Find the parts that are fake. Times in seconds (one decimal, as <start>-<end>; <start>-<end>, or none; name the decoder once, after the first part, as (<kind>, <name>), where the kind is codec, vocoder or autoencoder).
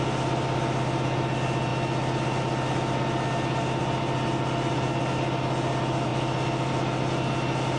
none